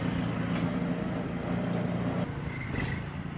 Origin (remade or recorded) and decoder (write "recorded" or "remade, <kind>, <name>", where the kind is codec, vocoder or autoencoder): recorded